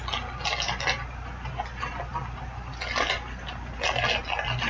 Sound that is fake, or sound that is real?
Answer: real